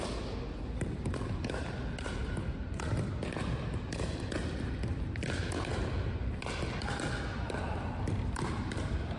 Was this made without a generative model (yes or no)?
yes